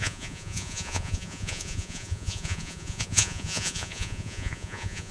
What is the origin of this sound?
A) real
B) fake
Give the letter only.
B